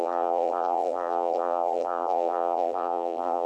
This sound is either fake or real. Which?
fake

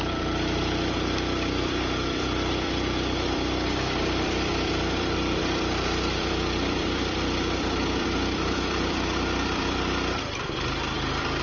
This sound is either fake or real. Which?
fake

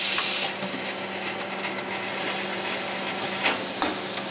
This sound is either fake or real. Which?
real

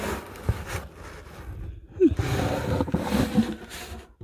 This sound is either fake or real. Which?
real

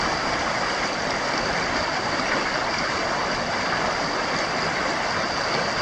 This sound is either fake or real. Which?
real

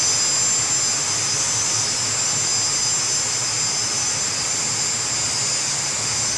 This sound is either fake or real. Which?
real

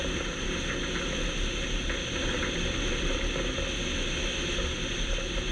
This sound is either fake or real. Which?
real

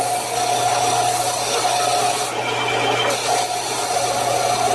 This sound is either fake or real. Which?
real